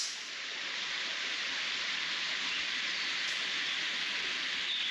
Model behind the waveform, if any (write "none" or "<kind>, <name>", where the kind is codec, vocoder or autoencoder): none